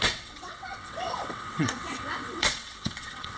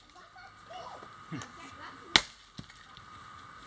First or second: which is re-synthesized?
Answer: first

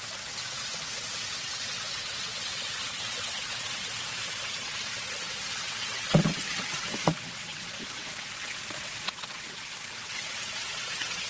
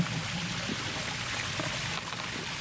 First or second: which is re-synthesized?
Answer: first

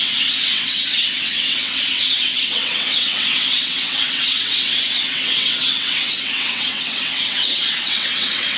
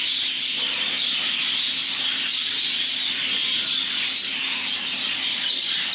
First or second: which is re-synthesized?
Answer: first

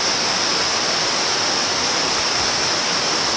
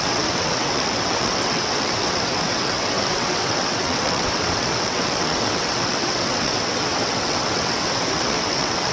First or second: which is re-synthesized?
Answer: second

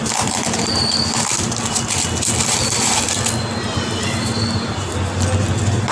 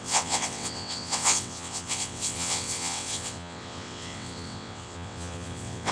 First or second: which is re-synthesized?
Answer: second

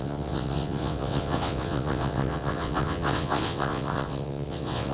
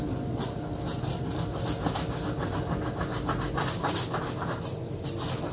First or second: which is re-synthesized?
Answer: first